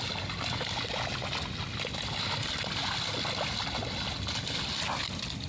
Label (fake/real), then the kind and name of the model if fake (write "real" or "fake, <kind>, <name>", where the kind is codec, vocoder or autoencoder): real